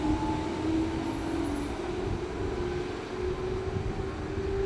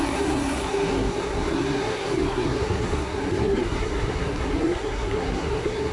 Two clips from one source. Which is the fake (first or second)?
second